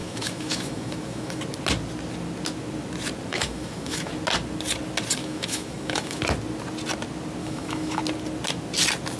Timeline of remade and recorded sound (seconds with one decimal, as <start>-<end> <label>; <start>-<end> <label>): 0.0-1.4 remade; 1.4-3.3 recorded; 3.3-4.1 remade; 4.1-5.2 recorded; 5.2-6.2 remade; 6.2-7.4 recorded; 7.4-8.0 remade; 8.0-9.2 recorded